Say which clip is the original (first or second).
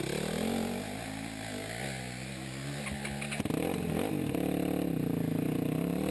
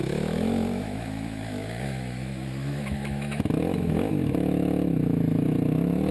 first